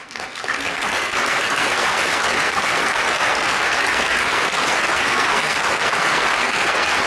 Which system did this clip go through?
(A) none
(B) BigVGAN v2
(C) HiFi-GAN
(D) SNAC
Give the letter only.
D